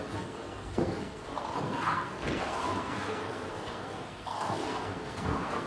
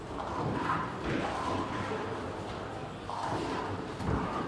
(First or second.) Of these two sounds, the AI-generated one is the first